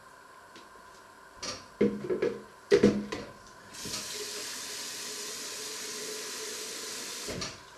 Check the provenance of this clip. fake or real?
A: real